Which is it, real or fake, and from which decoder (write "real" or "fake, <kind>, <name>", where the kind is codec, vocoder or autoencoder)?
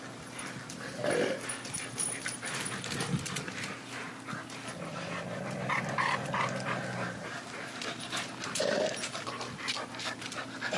fake, vocoder, BigVGAN v2